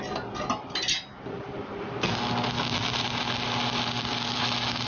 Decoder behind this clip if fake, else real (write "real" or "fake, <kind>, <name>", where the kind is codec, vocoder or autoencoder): real